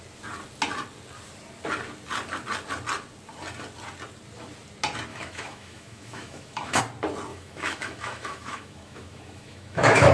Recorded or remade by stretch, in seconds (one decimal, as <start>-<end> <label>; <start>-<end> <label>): 0.0-5.1 recorded; 5.1-6.8 remade; 6.8-7.3 recorded; 7.3-10.1 remade